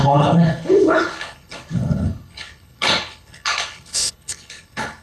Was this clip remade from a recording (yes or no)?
yes